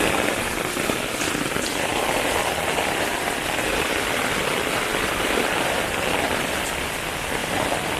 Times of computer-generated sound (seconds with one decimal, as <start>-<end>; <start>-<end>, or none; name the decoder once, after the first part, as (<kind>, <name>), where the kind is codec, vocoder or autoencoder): 1.9-6.7 (vocoder, BigVGAN v2); 7.4-8.0